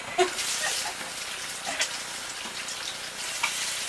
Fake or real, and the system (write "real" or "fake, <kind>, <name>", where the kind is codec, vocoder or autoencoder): fake, vocoder, BigVGAN v2